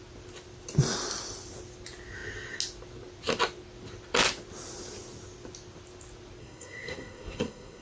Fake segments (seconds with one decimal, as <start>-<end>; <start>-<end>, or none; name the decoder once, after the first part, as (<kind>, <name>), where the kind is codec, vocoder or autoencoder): 6.4-7.8 (codec, SNAC)